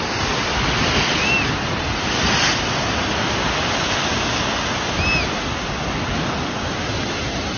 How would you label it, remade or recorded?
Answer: recorded